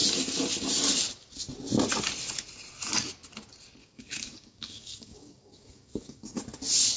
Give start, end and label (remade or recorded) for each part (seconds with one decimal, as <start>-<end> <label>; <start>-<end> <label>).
0.0-3.8 recorded; 3.8-6.4 remade; 6.4-7.0 recorded